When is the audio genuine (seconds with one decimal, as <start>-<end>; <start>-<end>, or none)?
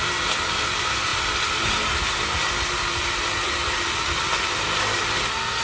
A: 0.0-5.6